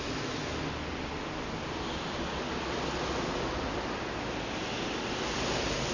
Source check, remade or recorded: recorded